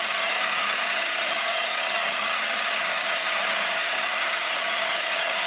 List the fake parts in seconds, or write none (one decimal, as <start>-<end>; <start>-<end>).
0.0-5.5